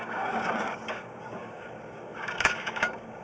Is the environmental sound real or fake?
fake